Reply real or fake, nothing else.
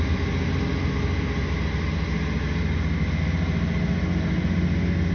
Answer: real